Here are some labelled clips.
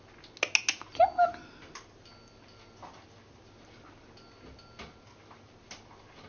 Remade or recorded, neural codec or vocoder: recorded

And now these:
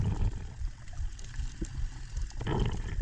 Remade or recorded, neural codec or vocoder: recorded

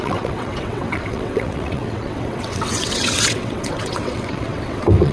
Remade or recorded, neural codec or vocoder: remade, vocoder, WaveNeXt